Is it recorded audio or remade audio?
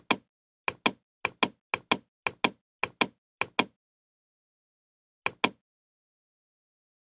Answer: recorded